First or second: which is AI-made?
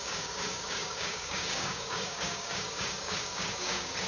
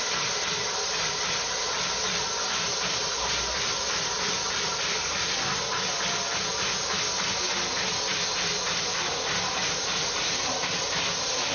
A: first